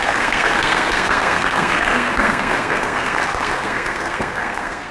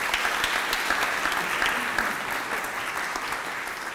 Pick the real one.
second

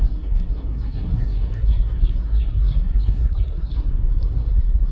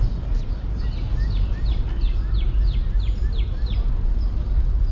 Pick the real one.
second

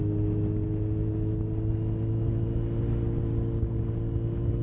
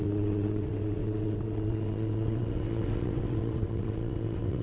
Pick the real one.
first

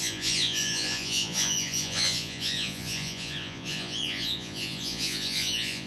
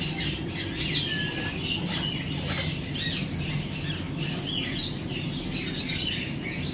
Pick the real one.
second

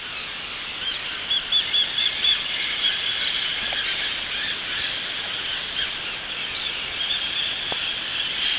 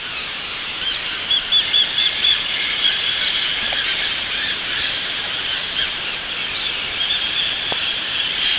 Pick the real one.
first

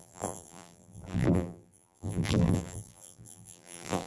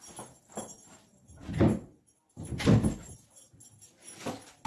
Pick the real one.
second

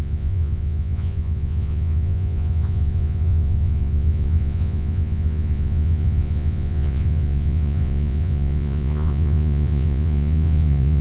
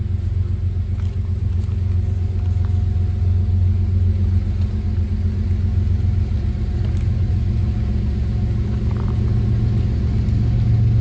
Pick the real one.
second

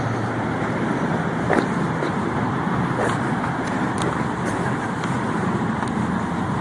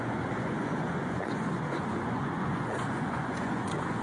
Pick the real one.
first